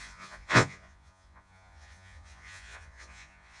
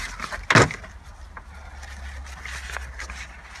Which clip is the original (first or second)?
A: second